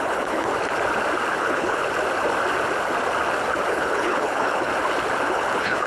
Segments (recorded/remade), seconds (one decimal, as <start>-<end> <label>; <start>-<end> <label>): 0.0-0.5 remade; 0.5-1.4 recorded; 1.4-1.8 remade; 1.8-3.7 recorded; 3.7-4.7 remade; 4.7-5.3 recorded; 5.3-5.9 remade